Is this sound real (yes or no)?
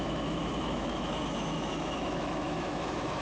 no